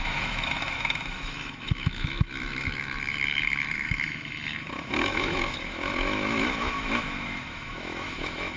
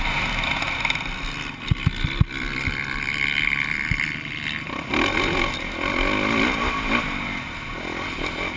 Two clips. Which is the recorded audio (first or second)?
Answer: second